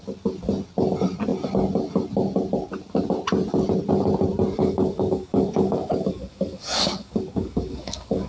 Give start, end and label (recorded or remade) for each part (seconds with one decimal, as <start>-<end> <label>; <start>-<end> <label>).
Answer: 0.0-4.6 recorded; 4.6-8.3 remade